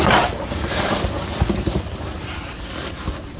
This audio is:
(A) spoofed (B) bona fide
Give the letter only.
B